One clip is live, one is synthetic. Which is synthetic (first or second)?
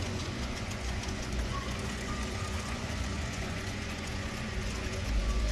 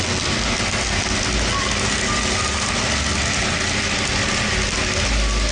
first